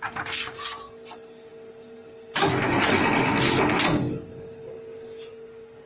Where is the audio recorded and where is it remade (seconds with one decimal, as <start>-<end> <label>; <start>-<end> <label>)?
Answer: 0.0-5.9 recorded